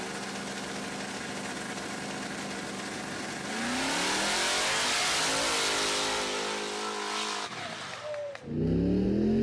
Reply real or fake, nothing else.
real